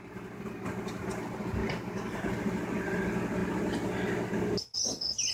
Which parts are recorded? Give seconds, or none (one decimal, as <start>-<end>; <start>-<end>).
0.0-1.6; 2.2-5.3